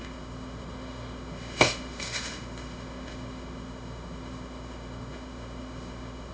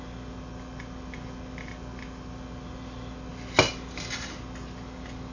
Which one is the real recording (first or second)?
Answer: second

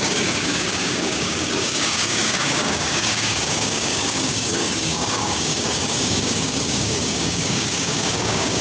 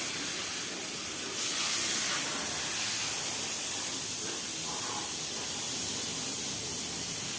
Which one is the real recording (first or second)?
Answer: second